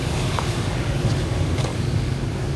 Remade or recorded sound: remade